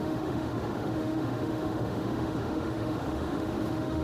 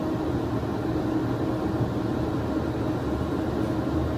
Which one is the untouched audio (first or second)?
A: second